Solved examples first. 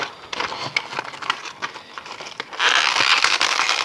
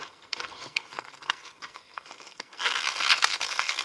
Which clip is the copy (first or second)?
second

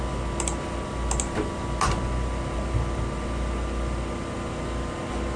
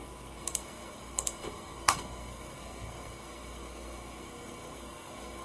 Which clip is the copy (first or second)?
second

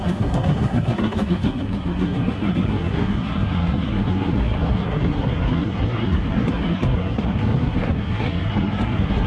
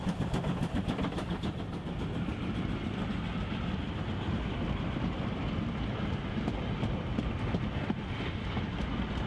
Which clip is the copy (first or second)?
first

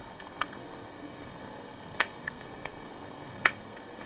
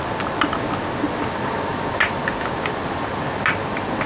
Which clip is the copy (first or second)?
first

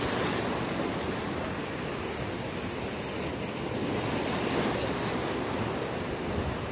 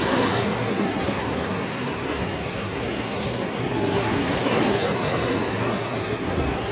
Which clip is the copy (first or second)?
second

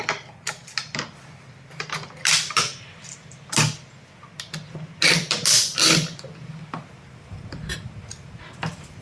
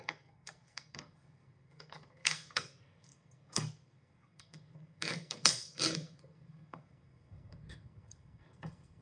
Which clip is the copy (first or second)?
second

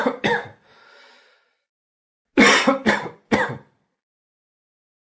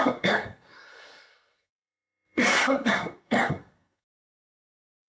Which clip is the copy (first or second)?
second